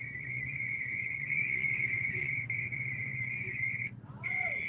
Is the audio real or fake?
fake